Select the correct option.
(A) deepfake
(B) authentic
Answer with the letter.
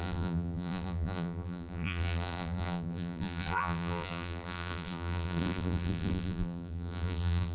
A